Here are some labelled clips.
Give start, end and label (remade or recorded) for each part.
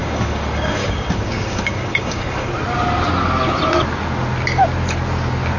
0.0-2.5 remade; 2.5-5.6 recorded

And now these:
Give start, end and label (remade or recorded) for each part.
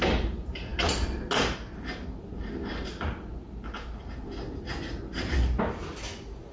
0.0-6.5 recorded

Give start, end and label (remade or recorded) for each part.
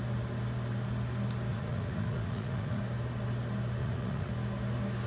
0.0-1.5 recorded; 1.5-2.8 remade; 2.8-3.8 recorded; 3.8-4.3 remade; 4.3-5.1 recorded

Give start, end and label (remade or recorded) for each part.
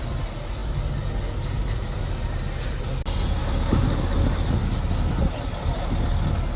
0.0-3.4 recorded; 3.4-4.1 remade; 4.1-6.6 recorded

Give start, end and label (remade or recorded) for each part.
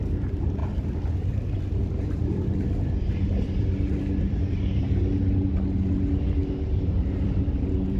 0.0-0.6 recorded; 0.6-4.8 remade; 4.8-6.4 recorded; 6.4-8.0 remade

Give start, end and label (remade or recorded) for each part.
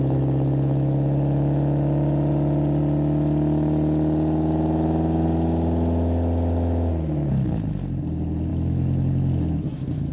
0.0-10.1 recorded